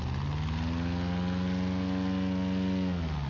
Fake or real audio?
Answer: real